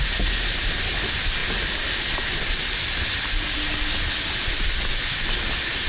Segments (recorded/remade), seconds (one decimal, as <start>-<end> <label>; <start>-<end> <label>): 0.0-5.9 recorded